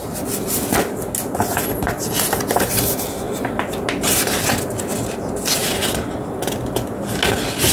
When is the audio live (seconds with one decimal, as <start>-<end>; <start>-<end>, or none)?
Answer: 0.0-7.7